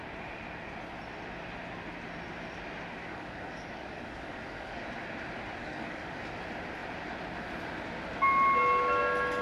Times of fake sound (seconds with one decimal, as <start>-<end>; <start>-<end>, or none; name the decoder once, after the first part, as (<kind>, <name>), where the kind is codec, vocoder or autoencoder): 3.0-4.8 (codec, DAC); 5.6-6.2